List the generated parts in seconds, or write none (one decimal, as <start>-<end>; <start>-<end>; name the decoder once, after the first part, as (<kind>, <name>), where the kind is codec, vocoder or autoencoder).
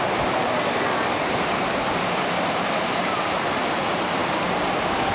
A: none